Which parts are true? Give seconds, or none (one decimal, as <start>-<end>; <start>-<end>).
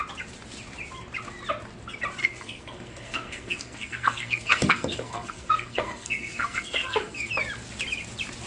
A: 0.0-2.2; 7.3-8.5